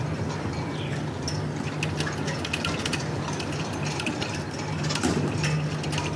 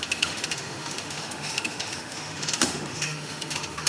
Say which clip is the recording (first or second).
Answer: first